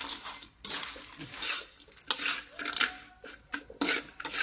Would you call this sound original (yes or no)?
yes